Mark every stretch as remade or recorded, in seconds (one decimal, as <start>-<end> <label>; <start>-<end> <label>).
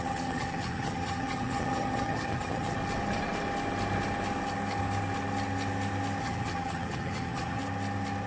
0.0-2.8 remade; 2.8-6.2 recorded; 6.2-7.6 remade; 7.6-8.3 recorded